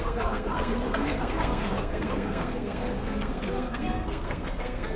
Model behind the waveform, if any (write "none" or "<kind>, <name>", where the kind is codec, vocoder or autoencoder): codec, SNAC